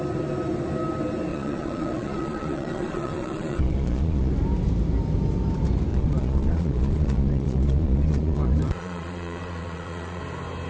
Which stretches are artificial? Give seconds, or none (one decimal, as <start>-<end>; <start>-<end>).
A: 1.3-4.3; 5.9-10.2